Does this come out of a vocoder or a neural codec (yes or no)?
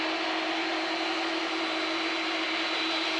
no